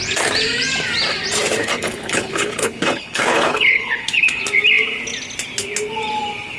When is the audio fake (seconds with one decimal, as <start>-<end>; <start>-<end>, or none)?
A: 1.6-4.4